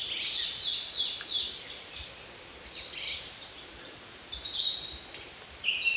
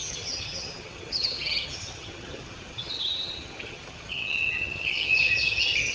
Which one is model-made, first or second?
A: second